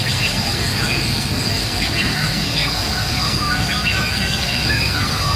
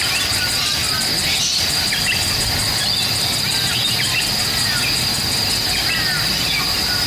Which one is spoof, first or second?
first